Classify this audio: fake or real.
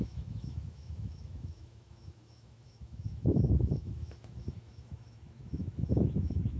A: fake